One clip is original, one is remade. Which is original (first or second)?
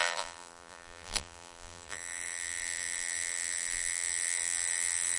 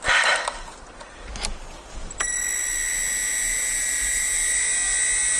second